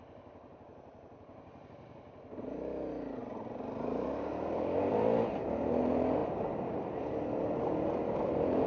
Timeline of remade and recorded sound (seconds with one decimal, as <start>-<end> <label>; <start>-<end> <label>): 0.0-8.7 recorded